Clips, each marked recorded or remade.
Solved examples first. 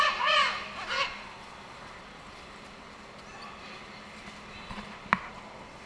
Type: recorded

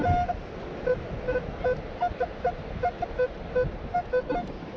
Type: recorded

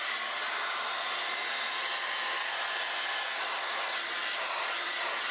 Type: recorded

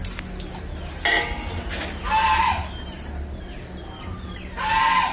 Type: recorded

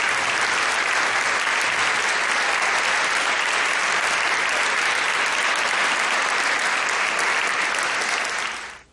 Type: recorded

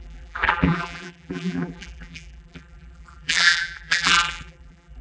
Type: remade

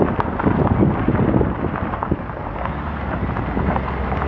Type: recorded